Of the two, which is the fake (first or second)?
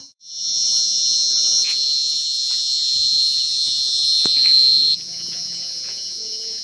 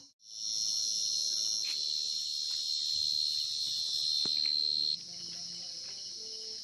first